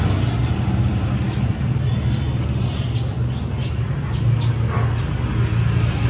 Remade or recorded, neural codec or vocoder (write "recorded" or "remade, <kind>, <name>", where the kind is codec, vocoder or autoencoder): recorded